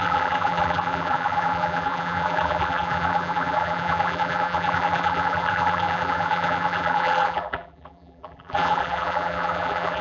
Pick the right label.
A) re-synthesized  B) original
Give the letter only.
A